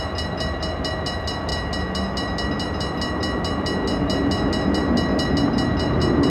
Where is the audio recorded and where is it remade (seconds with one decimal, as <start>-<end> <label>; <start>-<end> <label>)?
0.0-6.3 recorded